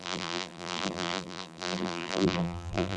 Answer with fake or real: fake